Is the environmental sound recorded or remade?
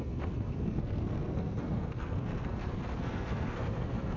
remade